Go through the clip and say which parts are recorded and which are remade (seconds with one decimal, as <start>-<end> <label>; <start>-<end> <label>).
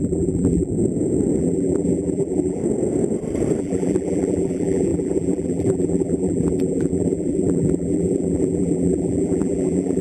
0.0-0.7 remade; 0.7-1.4 recorded; 1.4-2.6 remade; 2.6-3.6 recorded; 3.6-10.0 remade